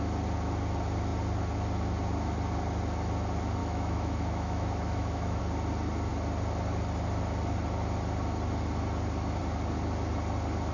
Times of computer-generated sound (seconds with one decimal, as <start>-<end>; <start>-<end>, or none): 3.6-5.4